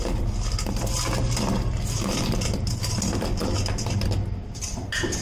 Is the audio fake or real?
real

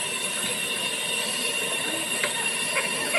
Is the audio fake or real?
real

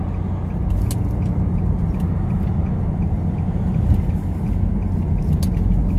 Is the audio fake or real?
real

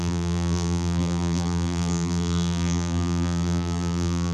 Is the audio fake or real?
fake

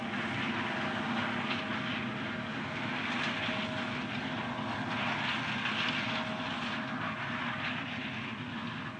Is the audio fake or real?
real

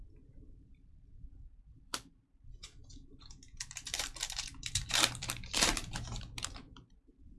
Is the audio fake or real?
fake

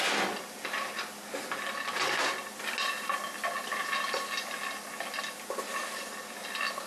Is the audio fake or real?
real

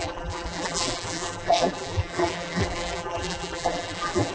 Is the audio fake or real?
fake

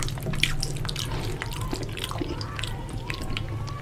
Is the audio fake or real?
real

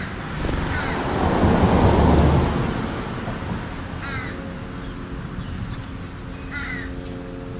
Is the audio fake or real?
real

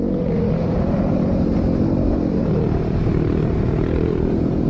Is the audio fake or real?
fake